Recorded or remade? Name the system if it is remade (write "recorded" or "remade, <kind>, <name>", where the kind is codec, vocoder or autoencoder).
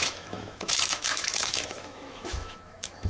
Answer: remade, autoencoder, DAC-VAE